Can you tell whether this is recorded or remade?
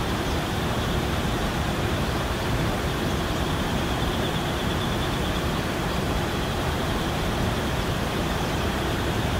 remade